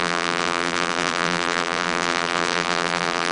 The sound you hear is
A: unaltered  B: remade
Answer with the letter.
B